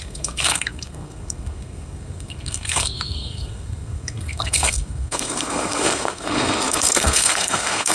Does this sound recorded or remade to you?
remade